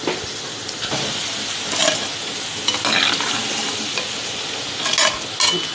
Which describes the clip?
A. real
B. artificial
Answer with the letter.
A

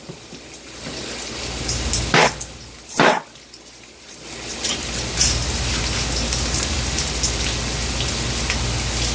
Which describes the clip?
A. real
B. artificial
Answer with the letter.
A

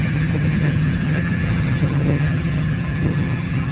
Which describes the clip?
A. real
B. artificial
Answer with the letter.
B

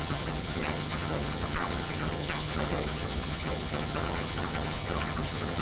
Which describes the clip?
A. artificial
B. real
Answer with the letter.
A